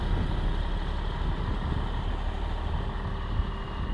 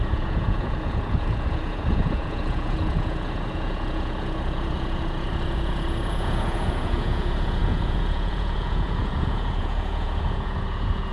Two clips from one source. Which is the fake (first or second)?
second